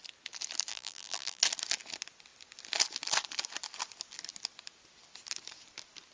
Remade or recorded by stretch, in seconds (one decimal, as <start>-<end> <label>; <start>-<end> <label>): 0.0-0.7 recorded; 0.7-1.4 remade; 1.4-6.1 recorded